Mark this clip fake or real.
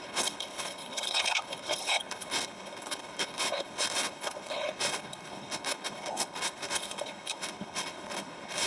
fake